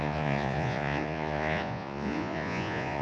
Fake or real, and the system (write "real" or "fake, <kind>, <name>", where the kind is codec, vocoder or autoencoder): fake, vocoder, Vocos